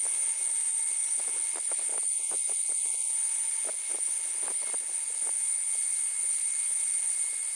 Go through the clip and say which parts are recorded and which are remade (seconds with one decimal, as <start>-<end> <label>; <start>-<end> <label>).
0.0-7.6 recorded